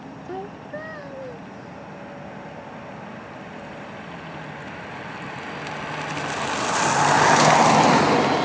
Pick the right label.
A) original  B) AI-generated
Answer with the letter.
A